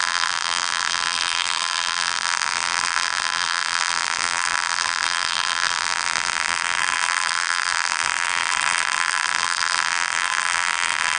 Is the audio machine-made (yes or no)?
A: yes